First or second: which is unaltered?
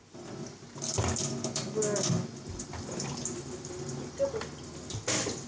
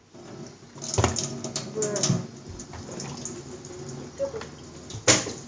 second